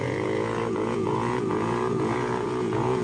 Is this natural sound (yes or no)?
no